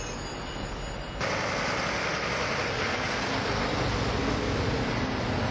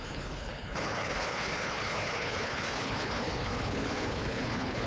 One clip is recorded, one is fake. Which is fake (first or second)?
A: second